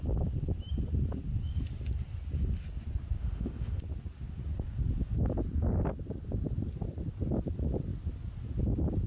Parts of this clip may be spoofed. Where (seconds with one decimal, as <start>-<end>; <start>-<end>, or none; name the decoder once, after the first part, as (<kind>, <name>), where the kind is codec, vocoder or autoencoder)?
3.2-3.8 (autoencoder, DAC-VAE)